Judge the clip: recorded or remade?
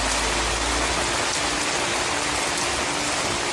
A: recorded